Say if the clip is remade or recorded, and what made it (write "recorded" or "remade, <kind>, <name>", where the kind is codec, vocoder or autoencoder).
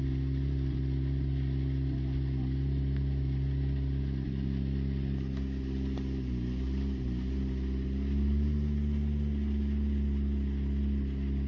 recorded